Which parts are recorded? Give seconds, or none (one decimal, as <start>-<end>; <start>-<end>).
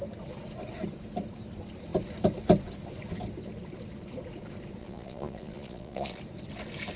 0.0-4.8; 6.2-7.0